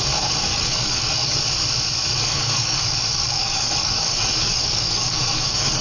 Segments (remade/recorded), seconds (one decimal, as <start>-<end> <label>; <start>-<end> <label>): 0.0-0.5 recorded; 0.5-1.4 remade; 1.4-2.1 recorded; 2.1-5.8 remade